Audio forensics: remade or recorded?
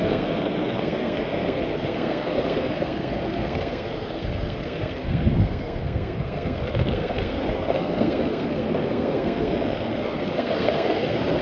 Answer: remade